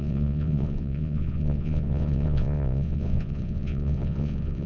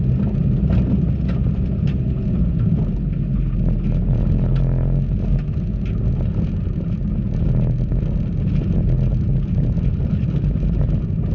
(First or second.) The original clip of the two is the second